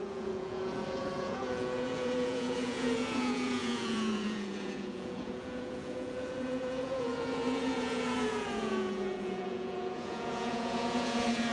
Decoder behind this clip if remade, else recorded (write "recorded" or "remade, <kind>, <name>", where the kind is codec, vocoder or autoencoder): remade, vocoder, Vocos